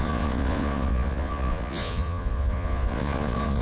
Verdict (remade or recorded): remade